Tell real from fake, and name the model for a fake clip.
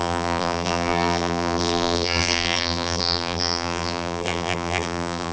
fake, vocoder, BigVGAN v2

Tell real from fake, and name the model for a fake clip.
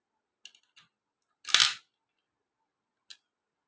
real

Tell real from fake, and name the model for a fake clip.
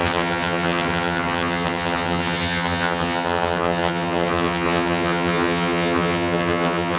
fake, vocoder, HiFi-GAN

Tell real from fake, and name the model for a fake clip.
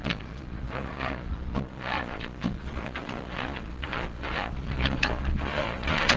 fake, vocoder, Vocos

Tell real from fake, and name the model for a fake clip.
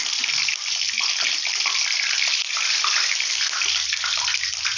real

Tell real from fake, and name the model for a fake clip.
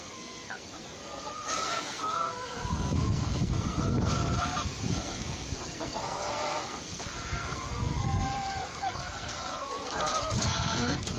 fake, codec, SNAC